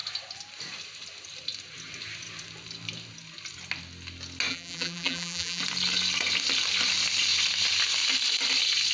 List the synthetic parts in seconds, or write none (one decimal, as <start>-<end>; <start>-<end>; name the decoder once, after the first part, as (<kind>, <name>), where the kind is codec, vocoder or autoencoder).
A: 4.5-5.6 (vocoder, BigVGAN v2)